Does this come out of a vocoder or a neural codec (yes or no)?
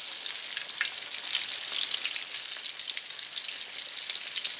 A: no